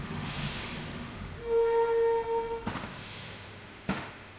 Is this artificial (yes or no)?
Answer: yes